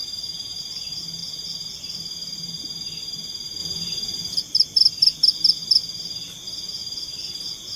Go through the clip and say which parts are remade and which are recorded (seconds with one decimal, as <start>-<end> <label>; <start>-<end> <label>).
0.0-0.6 remade; 0.6-7.8 recorded